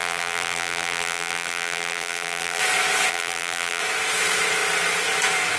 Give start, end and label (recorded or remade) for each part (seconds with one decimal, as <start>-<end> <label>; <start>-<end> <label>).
0.0-2.6 remade; 2.6-3.1 recorded; 3.1-3.8 remade; 3.8-5.6 recorded